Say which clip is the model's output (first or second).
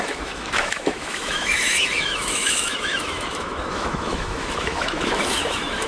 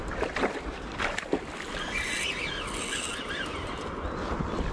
first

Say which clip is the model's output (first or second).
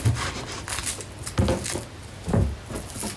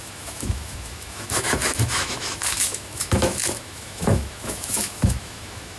second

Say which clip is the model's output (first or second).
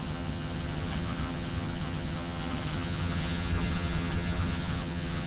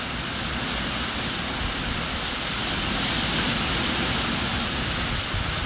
first